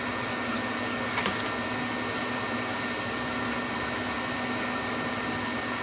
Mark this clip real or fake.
real